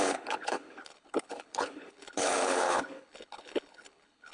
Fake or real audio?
fake